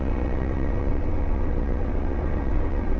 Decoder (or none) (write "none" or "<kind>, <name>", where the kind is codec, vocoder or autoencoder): vocoder, WaveNeXt